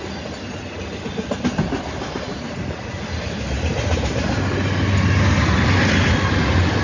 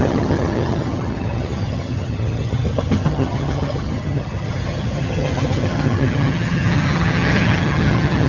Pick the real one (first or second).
first